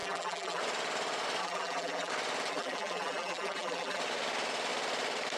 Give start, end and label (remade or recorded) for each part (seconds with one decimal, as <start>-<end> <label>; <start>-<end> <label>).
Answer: 0.0-0.6 remade; 0.6-1.4 recorded; 1.4-2.1 remade; 2.1-2.5 recorded; 2.5-4.0 remade; 4.0-5.4 recorded